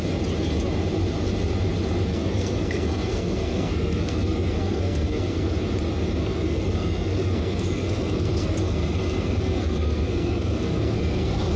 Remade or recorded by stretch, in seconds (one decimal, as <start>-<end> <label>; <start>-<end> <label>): 0.0-2.1 recorded; 2.1-5.6 remade; 5.6-6.2 recorded; 6.2-11.6 remade